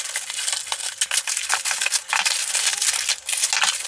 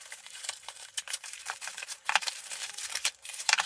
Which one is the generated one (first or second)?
second